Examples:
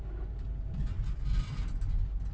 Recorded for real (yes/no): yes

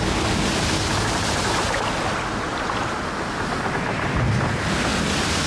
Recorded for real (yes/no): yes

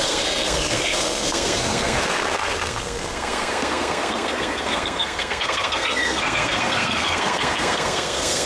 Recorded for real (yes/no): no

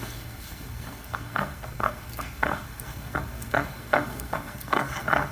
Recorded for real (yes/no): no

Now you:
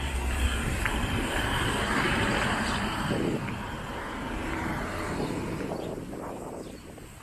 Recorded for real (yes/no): yes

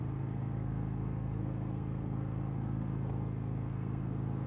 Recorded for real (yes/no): no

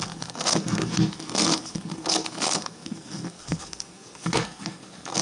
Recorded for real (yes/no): no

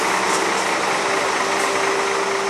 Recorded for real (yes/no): yes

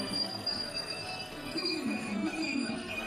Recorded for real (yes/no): no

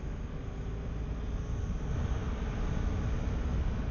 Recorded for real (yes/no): yes